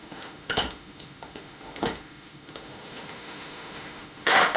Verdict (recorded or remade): remade